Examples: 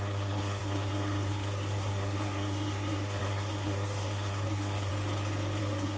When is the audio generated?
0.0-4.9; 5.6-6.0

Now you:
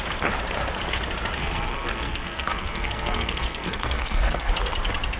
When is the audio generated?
1.4-4.5

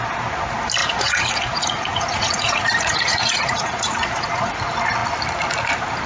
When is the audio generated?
0.8-4.5

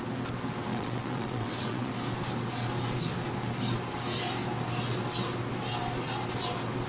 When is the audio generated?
0.7-1.9

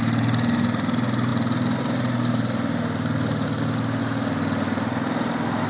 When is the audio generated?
none

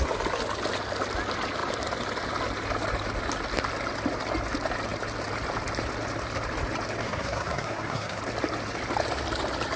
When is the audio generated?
7.0-8.2

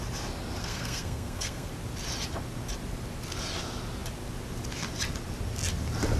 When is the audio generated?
0.6-1.7

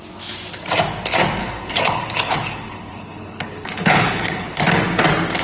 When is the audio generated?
1.4-4.6